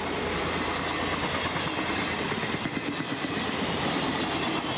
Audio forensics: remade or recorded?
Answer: recorded